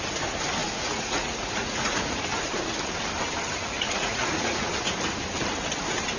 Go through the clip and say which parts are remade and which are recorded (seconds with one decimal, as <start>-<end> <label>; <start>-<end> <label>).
0.0-0.6 recorded; 0.6-2.3 remade; 2.3-3.6 recorded; 3.6-4.7 remade; 4.7-6.2 recorded